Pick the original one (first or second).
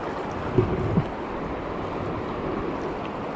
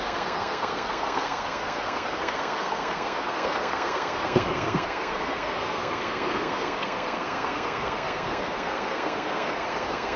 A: first